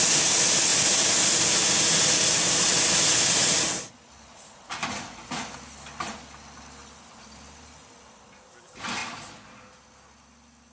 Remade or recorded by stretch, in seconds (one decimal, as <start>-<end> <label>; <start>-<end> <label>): 0.0-10.7 recorded

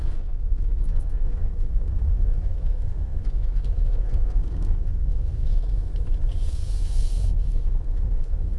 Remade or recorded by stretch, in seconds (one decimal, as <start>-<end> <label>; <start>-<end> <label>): 0.0-5.9 remade; 5.9-6.5 recorded; 6.5-8.6 remade

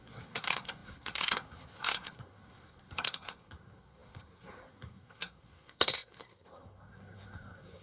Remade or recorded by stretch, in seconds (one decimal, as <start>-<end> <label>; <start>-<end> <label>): 0.0-7.8 remade

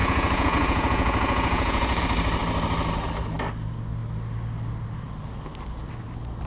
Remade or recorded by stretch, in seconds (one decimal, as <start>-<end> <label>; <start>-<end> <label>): 0.0-2.0 remade; 2.0-6.5 recorded